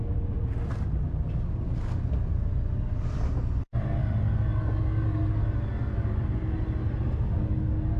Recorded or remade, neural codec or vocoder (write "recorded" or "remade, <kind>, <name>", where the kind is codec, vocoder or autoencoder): recorded